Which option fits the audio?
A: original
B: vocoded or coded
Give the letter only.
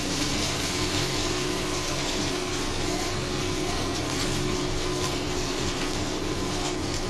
B